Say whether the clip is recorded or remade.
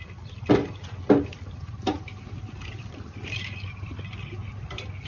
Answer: recorded